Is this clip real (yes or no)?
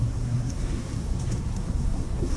no